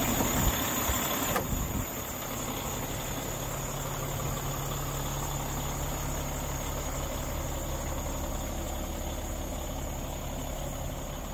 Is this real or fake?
real